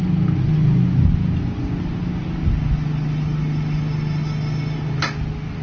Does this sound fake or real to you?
real